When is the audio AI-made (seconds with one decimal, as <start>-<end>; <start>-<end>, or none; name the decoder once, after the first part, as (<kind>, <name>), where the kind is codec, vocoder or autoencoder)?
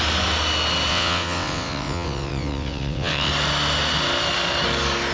0.9-3.3 (vocoder, WaveNeXt)